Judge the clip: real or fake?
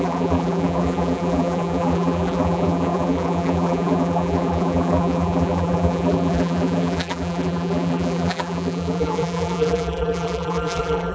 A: fake